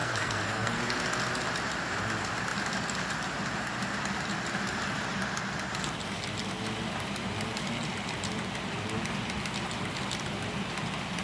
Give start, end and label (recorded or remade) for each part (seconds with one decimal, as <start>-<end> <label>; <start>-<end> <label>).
0.0-0.8 remade; 0.8-11.2 recorded